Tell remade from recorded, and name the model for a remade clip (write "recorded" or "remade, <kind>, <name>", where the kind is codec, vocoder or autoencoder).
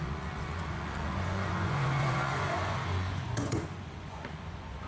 remade, vocoder, Vocos